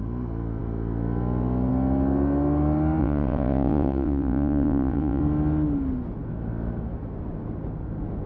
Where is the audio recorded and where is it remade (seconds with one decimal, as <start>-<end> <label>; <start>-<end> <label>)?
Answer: 0.0-3.0 recorded; 3.0-5.2 remade; 5.2-8.3 recorded